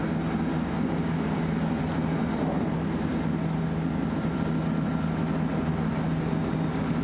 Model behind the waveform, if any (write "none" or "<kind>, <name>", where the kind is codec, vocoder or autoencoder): none